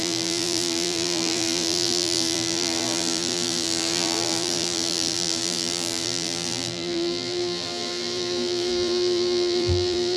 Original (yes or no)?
no